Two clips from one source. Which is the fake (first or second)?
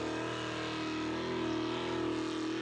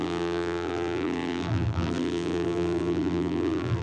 second